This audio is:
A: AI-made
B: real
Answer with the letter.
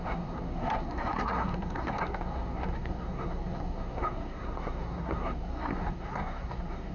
A